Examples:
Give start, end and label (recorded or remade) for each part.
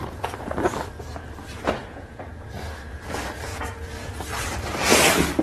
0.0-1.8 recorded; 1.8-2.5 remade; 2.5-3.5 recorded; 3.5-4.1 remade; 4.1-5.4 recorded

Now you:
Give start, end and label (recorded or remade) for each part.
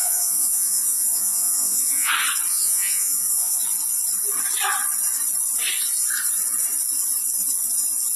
0.0-2.1 remade; 2.1-2.5 recorded; 2.5-3.6 remade; 3.6-8.2 recorded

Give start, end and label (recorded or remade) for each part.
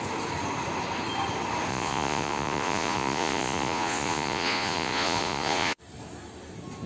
0.0-1.7 recorded; 1.7-5.8 remade; 5.8-6.9 recorded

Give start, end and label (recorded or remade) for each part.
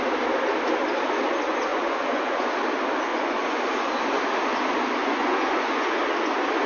0.0-1.7 recorded; 1.7-2.5 remade; 2.5-3.1 recorded; 3.1-3.6 remade; 3.6-5.0 recorded; 5.0-6.0 remade; 6.0-6.7 recorded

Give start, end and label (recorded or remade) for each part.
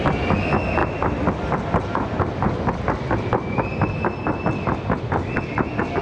0.0-6.0 recorded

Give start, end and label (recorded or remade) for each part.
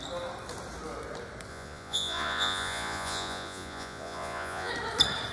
0.0-1.5 recorded; 1.5-4.7 remade; 4.7-5.3 recorded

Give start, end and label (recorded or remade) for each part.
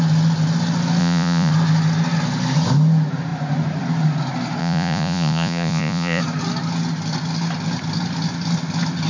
0.0-1.0 recorded; 1.0-1.5 remade; 1.5-4.6 recorded; 4.6-6.2 remade; 6.2-9.1 recorded